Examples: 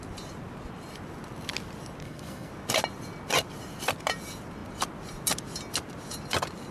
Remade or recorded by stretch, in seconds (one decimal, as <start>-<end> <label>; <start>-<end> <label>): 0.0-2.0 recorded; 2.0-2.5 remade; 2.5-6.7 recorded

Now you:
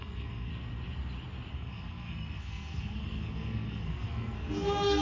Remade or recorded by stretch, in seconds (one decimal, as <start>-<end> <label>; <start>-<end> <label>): 0.0-0.5 remade; 0.5-1.5 recorded; 1.5-5.0 remade

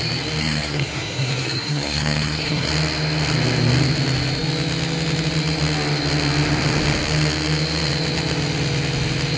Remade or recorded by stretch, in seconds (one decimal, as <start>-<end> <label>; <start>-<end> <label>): 0.0-0.4 recorded; 0.4-2.7 remade; 2.7-9.4 recorded

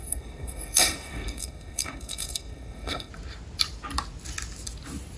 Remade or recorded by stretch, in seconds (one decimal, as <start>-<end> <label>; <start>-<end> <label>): 0.0-3.1 remade; 3.1-5.2 recorded